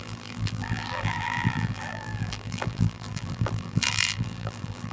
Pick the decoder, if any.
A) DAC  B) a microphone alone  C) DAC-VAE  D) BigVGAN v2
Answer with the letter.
D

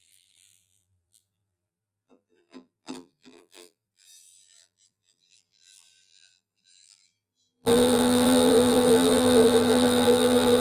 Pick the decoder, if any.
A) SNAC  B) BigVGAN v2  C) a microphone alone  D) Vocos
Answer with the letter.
B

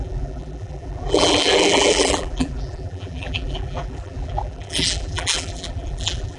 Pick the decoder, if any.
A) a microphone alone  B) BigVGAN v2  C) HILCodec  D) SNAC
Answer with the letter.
B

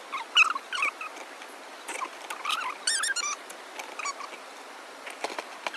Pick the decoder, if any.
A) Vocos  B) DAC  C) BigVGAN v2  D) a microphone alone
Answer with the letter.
D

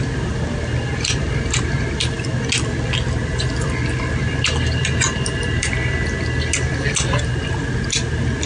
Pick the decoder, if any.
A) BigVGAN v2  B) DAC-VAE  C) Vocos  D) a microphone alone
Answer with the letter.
D